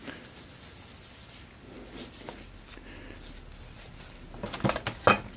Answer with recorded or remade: recorded